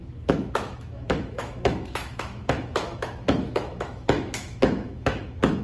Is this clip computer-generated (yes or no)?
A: yes